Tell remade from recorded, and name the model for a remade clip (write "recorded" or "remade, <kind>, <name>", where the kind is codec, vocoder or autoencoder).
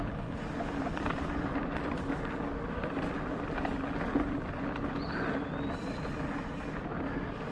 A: recorded